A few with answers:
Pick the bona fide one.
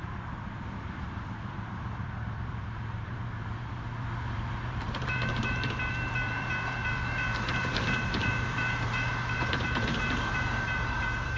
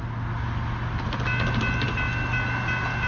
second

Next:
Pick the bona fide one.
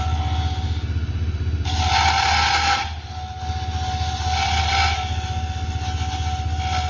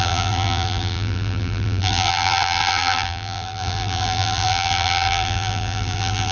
first